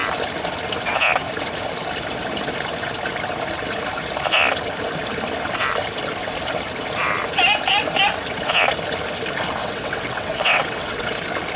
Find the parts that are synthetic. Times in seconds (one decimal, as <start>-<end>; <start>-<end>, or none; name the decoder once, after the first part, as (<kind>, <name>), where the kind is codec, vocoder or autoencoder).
9.6-11.1 (vocoder, WaveNeXt)